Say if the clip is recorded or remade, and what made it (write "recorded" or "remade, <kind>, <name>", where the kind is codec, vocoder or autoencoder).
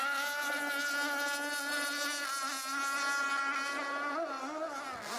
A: recorded